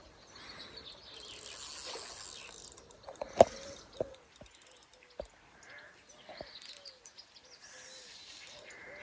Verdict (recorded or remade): recorded